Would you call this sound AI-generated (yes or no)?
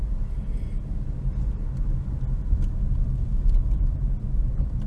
no